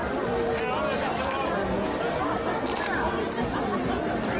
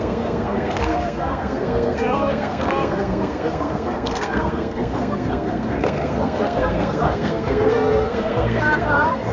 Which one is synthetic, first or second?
second